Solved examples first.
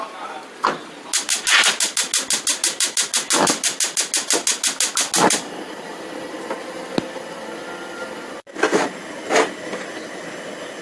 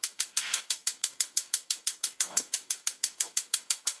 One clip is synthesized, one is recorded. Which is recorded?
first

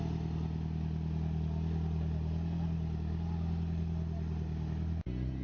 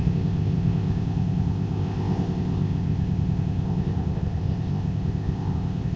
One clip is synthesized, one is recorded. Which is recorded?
first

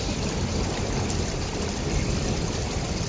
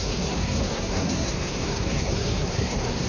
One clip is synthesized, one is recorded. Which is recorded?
first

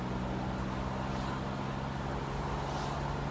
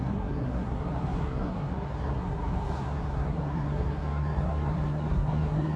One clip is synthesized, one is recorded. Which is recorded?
first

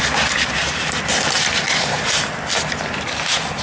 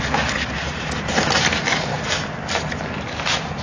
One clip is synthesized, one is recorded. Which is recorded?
second